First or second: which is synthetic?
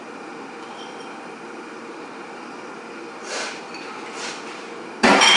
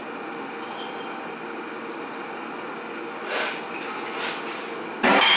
first